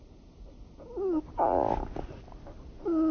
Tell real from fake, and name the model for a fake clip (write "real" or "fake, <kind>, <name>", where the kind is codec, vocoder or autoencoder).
real